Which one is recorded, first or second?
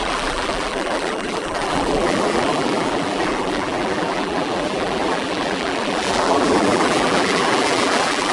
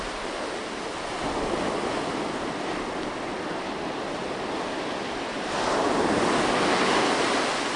second